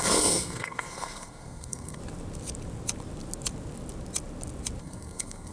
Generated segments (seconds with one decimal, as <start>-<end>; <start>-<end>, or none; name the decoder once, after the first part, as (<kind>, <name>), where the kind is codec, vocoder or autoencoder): 0.0-2.0 (codec, SNAC); 4.8-5.5